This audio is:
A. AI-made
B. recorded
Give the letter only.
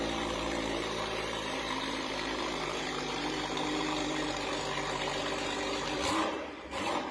A